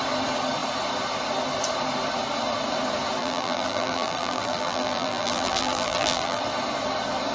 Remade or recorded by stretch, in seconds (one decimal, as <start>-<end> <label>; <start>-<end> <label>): 0.0-3.2 recorded; 3.2-6.4 remade; 6.4-7.3 recorded